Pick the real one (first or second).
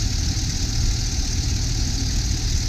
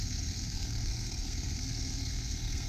first